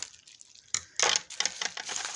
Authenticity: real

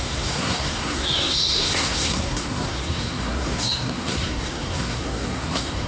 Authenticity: fake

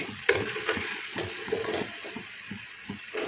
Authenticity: fake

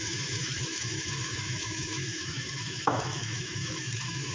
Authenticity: fake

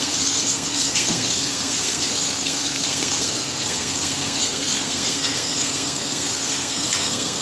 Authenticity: fake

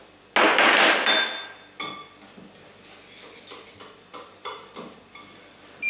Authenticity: real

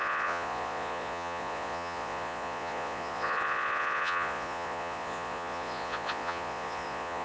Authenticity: fake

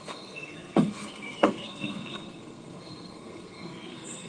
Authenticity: fake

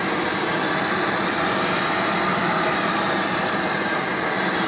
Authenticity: real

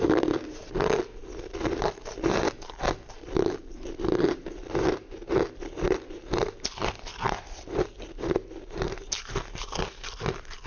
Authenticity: real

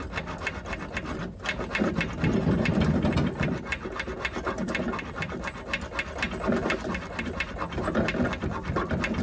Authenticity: real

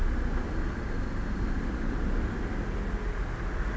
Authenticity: real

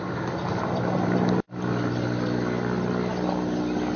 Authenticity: real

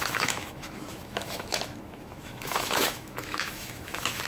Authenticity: fake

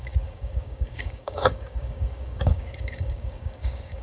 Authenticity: fake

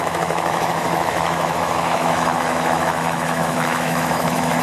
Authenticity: fake